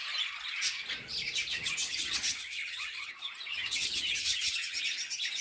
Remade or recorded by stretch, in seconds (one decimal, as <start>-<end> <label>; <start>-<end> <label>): 0.0-1.5 recorded; 1.5-3.1 remade; 3.1-3.5 recorded; 3.5-4.8 remade; 4.8-5.4 recorded